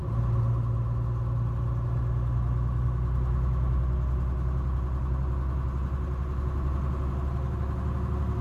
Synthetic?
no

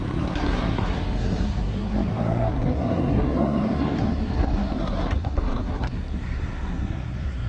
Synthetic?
yes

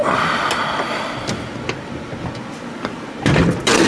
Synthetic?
no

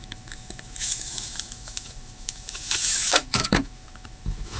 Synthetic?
yes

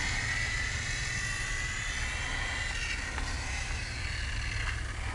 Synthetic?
no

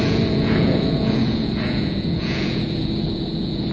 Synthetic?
yes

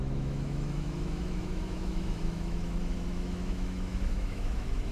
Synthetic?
yes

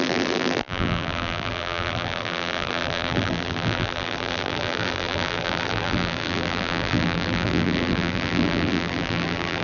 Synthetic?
yes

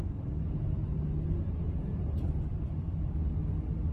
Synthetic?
no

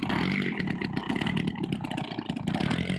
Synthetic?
no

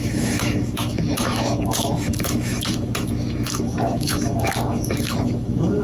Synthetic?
yes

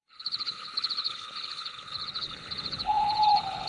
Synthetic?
yes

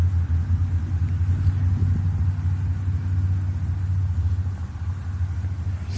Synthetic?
no